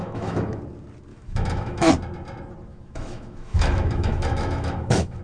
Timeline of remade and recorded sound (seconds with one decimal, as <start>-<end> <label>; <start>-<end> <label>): 0.0-0.6 remade; 0.6-1.1 recorded; 1.1-1.9 remade; 1.9-2.7 recorded; 2.7-5.2 remade